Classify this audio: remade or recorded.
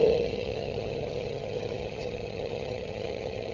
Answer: remade